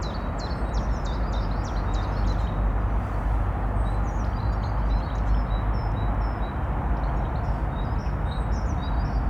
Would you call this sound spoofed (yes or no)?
no